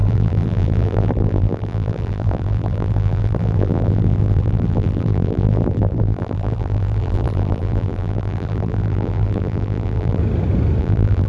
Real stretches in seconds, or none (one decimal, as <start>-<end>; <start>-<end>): 10.2-10.8